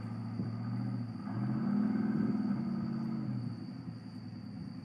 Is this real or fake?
real